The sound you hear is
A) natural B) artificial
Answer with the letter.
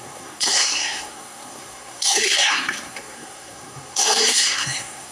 B